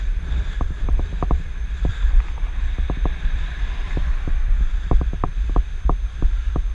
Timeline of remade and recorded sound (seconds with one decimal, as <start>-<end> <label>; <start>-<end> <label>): 0.0-5.3 remade; 5.3-6.7 recorded